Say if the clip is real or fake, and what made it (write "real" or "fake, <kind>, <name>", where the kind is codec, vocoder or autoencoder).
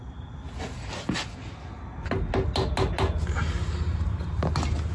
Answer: real